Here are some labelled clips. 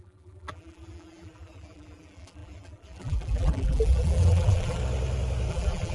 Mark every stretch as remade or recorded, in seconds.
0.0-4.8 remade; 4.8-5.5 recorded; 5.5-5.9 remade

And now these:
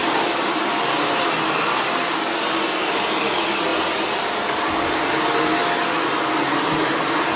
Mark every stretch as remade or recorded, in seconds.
0.0-0.8 remade; 0.8-7.4 recorded

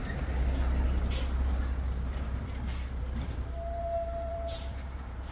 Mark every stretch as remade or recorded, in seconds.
0.0-3.0 recorded; 3.0-5.3 remade